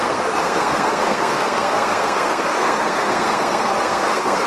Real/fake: fake